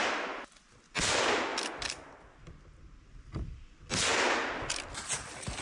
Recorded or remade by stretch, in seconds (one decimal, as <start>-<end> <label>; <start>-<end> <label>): 0.0-5.6 recorded